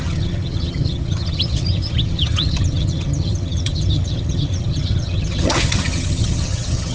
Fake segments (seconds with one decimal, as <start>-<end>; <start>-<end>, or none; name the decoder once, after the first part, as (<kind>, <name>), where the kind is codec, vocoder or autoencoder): 0.0-6.9 (vocoder, HiFi-GAN)